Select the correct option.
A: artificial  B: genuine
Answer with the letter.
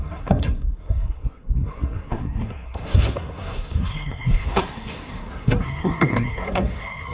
A